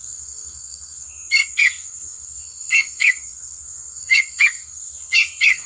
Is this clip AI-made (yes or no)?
yes